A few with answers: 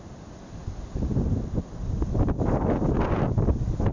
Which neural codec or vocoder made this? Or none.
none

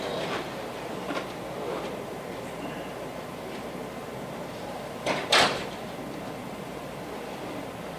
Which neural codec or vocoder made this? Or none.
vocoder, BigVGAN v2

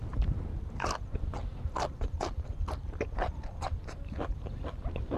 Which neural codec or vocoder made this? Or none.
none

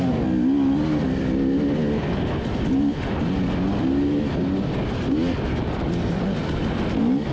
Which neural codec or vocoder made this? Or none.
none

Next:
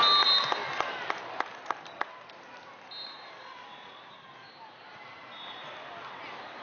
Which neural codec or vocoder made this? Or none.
none